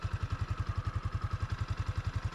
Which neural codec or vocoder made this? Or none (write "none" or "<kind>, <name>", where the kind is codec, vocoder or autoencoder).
none